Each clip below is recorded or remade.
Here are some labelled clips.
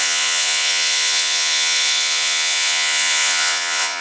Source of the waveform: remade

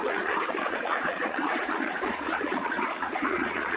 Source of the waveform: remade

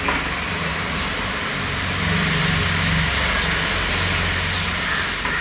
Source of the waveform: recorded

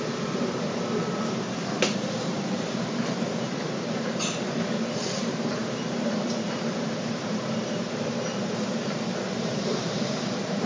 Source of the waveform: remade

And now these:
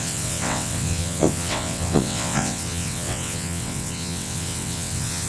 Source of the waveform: remade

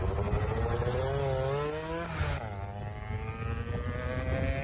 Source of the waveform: recorded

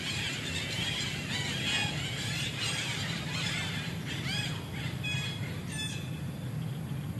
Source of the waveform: recorded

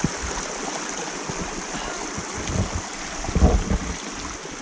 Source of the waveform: recorded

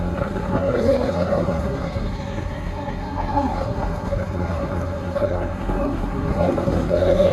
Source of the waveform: remade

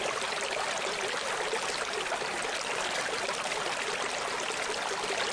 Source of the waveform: recorded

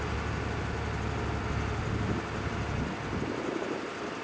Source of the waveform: recorded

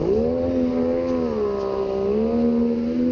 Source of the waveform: recorded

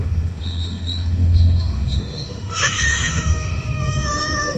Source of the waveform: remade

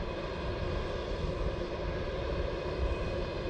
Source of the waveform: recorded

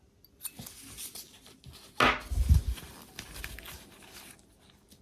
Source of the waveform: recorded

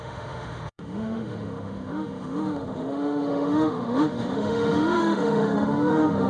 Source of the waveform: remade